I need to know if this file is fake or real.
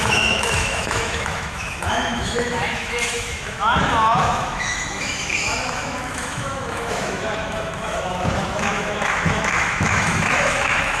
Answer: fake